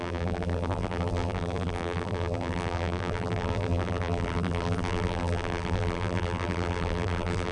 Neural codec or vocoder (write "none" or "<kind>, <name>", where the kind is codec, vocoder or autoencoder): vocoder, BigVGAN v2